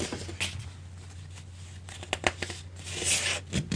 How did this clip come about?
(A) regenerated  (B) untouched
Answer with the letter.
B